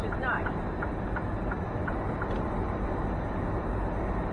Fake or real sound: real